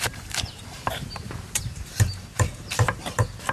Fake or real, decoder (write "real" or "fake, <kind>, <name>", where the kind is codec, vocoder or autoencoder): fake, vocoder, BigVGAN v2